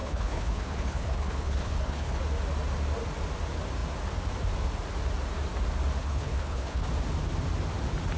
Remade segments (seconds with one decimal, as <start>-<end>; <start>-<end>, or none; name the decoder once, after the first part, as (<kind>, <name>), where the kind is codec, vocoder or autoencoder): 0.0-2.2 (codec, HILCodec); 6.0-6.9